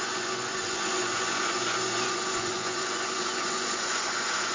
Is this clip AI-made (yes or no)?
yes